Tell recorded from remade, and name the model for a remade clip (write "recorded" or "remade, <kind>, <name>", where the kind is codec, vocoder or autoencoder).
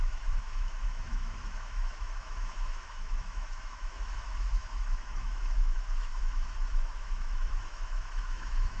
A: remade, autoencoder, DAC-VAE